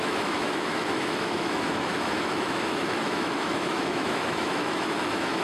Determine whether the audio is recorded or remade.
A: remade